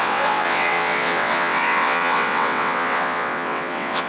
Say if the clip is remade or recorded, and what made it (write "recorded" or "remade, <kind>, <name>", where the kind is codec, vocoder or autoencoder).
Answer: remade, vocoder, WaveNeXt